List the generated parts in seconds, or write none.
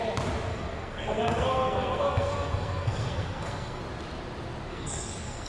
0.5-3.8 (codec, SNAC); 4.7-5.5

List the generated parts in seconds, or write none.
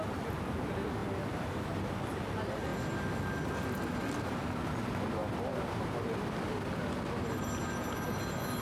none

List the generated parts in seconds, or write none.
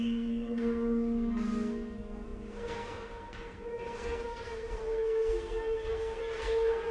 0.0-6.9 (codec, SNAC)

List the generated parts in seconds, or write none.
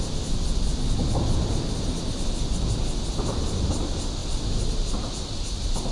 none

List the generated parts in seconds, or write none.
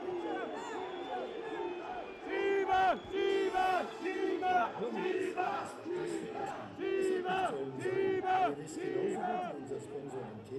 3.7-6.5 (codec, SNAC)